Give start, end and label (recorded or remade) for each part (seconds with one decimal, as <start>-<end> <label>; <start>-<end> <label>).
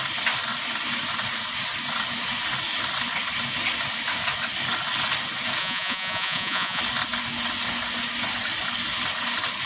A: 0.0-5.6 recorded; 5.6-6.8 remade; 6.8-9.7 recorded